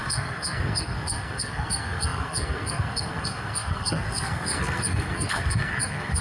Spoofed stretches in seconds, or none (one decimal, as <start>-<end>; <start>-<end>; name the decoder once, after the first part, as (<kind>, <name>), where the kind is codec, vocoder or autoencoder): 0.0-6.2 (codec, SNAC)